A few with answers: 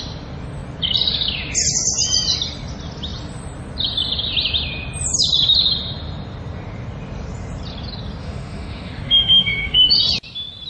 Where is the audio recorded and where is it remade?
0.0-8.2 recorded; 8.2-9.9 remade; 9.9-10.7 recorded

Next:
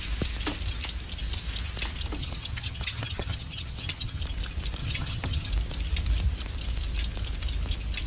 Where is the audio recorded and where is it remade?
0.0-2.2 recorded; 2.2-4.2 remade; 4.2-4.8 recorded; 4.8-5.5 remade; 5.5-8.1 recorded

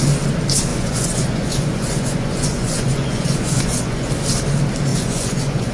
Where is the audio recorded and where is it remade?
0.0-0.7 recorded; 0.7-4.1 remade; 4.1-4.9 recorded; 4.9-5.7 remade

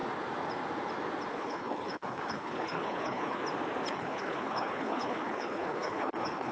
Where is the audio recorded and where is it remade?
0.0-1.3 recorded; 1.3-3.4 remade; 3.4-3.9 recorded; 3.9-6.5 remade

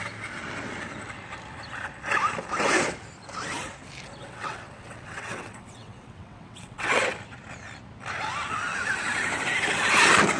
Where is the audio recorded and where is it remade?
0.0-4.2 recorded; 4.2-7.0 remade; 7.0-10.4 recorded

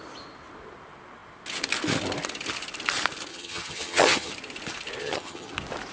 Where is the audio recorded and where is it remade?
0.0-3.3 recorded; 3.3-4.3 remade; 4.3-5.0 recorded; 5.0-5.5 remade; 5.5-5.9 recorded